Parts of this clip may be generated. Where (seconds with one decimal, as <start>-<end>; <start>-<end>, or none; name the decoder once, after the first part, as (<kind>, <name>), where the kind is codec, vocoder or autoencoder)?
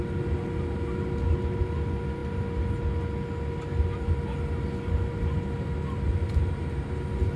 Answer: none